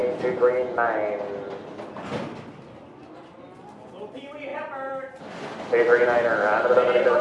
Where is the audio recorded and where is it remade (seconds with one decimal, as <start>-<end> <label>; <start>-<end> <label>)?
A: 0.0-3.2 recorded; 3.2-7.2 remade